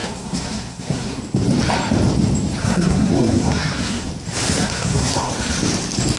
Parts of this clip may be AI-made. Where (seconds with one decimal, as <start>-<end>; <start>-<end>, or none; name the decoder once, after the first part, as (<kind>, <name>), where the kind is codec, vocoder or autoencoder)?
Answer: 0.0-1.2 (codec, SNAC); 2.6-4.1; 4.6-5.3